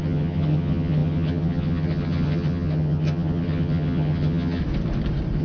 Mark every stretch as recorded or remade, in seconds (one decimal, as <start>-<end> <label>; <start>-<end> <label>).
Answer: 0.0-4.6 remade; 4.6-5.4 recorded